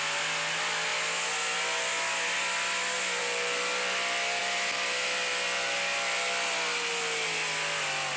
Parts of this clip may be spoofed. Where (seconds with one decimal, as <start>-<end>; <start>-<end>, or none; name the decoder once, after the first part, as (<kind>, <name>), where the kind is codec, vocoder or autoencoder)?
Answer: none